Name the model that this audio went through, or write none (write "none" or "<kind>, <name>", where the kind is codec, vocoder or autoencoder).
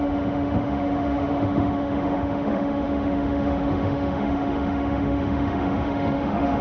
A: autoencoder, DAC-VAE